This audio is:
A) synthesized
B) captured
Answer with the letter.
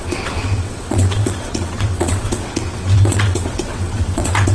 A